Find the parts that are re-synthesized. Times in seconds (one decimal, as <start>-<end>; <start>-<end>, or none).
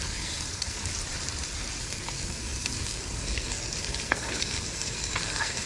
0.0-0.9; 1.8-5.7